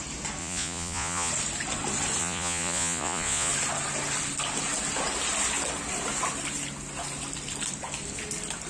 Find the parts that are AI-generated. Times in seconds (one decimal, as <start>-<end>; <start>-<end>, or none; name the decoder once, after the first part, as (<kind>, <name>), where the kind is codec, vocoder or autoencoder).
0.4-1.3 (vocoder, Vocos); 2.2-3.5